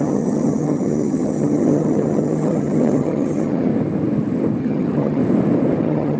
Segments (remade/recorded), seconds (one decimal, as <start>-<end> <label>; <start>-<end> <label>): 0.0-3.7 remade; 3.7-4.6 recorded; 4.6-5.2 remade; 5.2-5.8 recorded; 5.8-6.2 remade